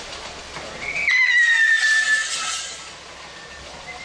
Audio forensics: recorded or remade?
recorded